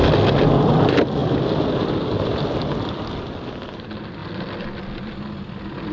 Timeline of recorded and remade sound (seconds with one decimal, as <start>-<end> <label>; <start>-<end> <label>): 0.0-5.9 recorded